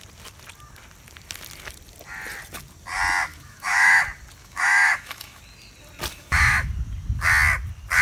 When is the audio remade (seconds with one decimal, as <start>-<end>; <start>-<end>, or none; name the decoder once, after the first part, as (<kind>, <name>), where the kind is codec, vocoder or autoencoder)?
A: 3.3-4.0 (autoencoder, DAC-VAE); 4.4-5.4; 6.1-6.7